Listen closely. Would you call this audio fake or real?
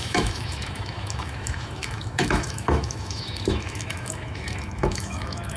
fake